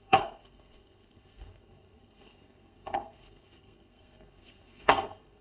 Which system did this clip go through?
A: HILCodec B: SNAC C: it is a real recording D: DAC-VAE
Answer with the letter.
B